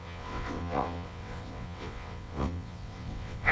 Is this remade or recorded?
remade